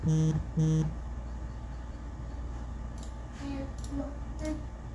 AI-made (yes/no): no